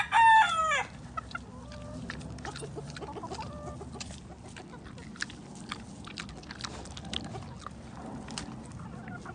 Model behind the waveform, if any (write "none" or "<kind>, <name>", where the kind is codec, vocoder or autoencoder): none